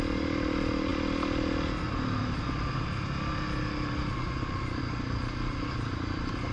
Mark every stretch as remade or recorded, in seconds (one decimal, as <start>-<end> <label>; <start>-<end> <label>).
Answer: 0.0-6.5 recorded